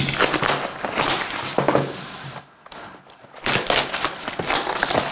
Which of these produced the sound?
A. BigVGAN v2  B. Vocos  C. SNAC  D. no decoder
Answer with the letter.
D